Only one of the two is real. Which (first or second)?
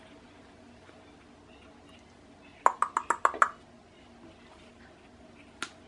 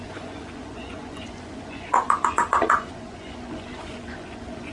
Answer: first